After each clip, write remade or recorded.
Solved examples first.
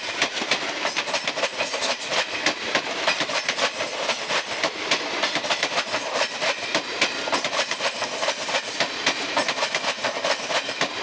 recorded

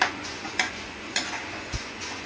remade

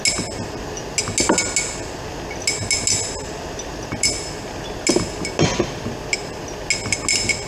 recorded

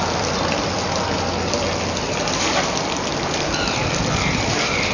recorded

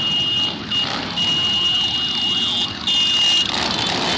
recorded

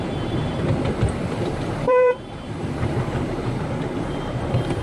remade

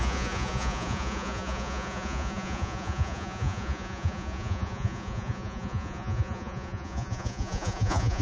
remade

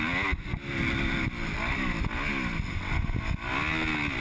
recorded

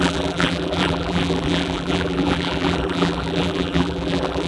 remade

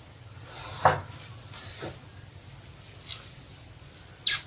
recorded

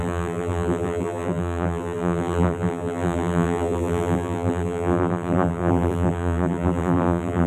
remade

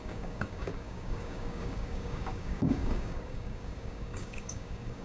remade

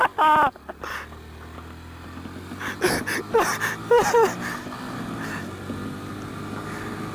recorded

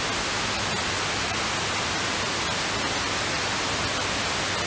recorded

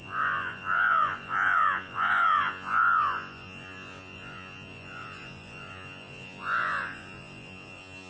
remade